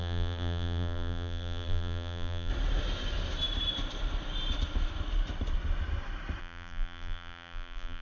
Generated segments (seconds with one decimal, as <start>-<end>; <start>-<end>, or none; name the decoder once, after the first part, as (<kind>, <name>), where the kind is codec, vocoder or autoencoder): 0.0-2.5 (vocoder, BigVGAN v2); 6.4-8.0